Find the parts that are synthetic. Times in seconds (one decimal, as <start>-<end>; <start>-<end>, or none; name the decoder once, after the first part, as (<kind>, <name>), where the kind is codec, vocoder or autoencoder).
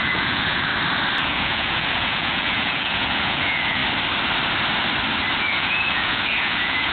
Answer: 0.0-0.7 (vocoder, Vocos); 1.2-3.8; 5.5-6.9